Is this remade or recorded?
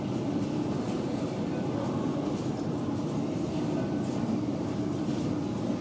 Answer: recorded